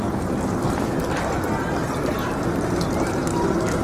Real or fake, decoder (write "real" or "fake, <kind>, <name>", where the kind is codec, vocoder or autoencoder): real